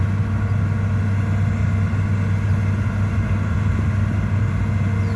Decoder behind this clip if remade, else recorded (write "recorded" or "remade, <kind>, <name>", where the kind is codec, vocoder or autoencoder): recorded